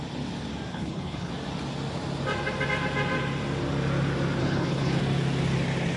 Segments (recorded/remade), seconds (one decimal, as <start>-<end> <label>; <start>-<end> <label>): 0.0-0.7 recorded; 0.7-1.3 remade; 1.3-4.4 recorded; 4.4-5.0 remade; 5.0-6.0 recorded